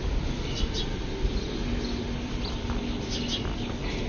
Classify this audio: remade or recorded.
recorded